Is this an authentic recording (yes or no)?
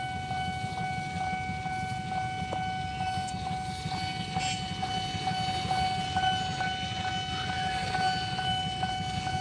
yes